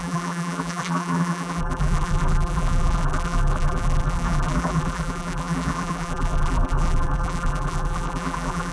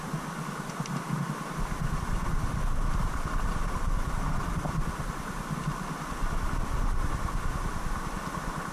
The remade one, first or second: first